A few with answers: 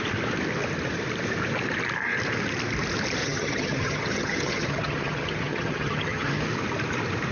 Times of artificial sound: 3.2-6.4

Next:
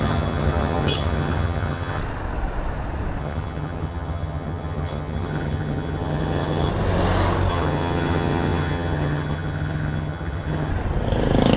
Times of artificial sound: 0.0-2.0; 3.2-6.7; 7.5-10.7

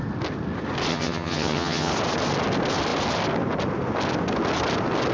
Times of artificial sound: 0.9-1.9

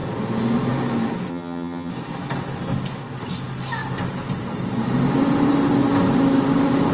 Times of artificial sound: 1.3-1.9

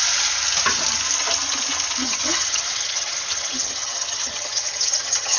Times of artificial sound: 2.0-5.4